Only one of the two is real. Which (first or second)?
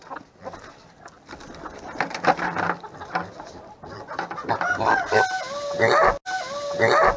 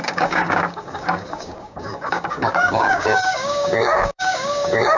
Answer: first